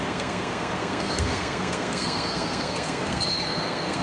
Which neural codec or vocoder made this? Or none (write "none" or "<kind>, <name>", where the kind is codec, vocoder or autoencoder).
codec, SNAC